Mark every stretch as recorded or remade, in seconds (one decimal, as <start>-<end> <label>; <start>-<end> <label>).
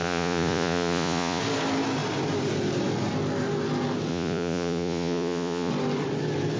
0.0-1.4 remade; 1.4-4.1 recorded; 4.1-5.7 remade; 5.7-6.6 recorded